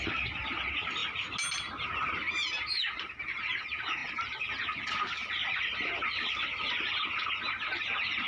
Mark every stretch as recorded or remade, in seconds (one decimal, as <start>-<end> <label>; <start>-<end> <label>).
0.0-8.3 recorded

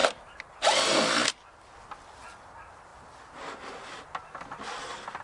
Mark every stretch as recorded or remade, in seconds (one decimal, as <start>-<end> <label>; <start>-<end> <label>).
0.0-5.2 recorded

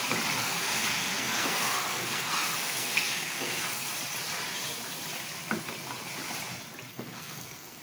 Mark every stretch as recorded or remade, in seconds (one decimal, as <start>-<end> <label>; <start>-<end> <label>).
0.0-0.4 recorded; 0.4-3.9 remade; 3.9-6.9 recorded; 6.9-7.8 remade